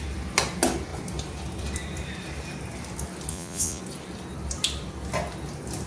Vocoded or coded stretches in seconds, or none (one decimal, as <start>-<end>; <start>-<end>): 3.3-3.8